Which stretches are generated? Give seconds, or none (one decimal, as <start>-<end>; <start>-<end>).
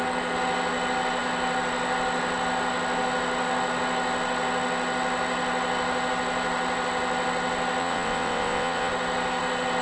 7.8-8.9